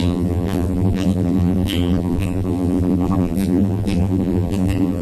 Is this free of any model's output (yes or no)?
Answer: no